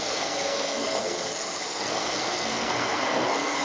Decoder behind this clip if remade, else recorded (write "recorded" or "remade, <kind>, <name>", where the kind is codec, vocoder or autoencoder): remade, codec, SNAC